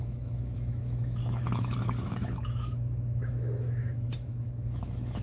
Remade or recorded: remade